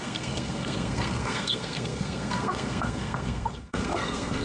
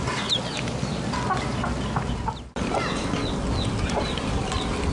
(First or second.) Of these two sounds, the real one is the second